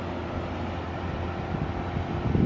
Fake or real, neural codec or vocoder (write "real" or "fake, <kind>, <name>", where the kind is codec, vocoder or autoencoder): real